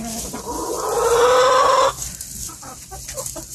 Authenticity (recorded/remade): recorded